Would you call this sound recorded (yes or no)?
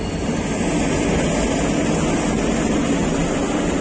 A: yes